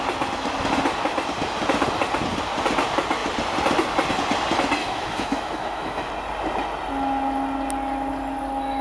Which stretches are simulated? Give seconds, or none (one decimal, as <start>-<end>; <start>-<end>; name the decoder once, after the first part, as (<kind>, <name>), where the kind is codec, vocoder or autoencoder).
4.8-6.1 (autoencoder, DAC-VAE)